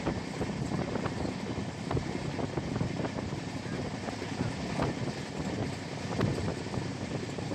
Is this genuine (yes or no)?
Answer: yes